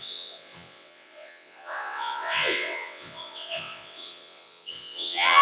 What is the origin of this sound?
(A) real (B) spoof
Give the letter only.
B